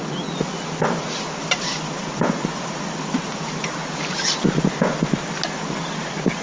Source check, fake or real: real